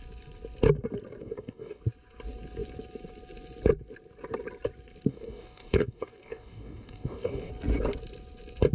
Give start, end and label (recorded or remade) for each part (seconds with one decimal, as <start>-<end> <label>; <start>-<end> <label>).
0.0-1.2 recorded; 1.2-1.8 remade; 1.8-5.1 recorded; 5.1-7.5 remade; 7.5-8.7 recorded